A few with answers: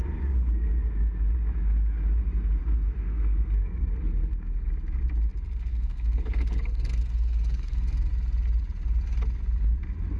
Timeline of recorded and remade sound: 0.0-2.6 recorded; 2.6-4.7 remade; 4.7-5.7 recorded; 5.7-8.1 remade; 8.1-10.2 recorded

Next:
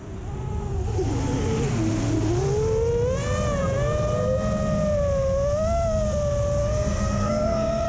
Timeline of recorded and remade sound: 0.0-6.6 recorded; 6.6-7.9 remade

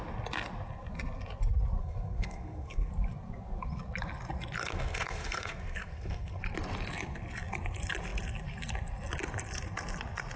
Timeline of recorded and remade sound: 0.0-1.8 recorded; 1.8-2.9 remade; 2.9-4.6 recorded; 4.6-6.4 remade; 6.4-10.4 recorded

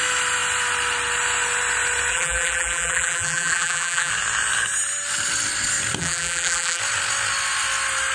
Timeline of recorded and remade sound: 0.0-2.1 recorded; 2.1-4.1 remade; 4.1-6.0 recorded; 6.0-6.8 remade; 6.8-8.1 recorded